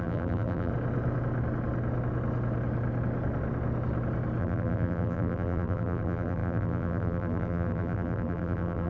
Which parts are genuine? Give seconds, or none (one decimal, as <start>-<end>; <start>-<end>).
0.7-4.4